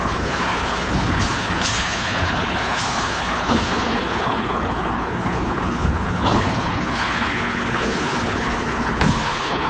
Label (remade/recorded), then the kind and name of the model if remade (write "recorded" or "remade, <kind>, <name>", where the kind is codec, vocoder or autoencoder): remade, codec, HILCodec